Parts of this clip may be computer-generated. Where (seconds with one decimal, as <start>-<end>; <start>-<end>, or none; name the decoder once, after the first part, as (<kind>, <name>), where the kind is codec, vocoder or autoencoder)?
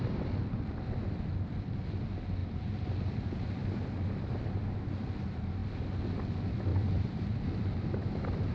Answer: 2.4-5.1 (vocoder, BigVGAN v2); 6.7-7.6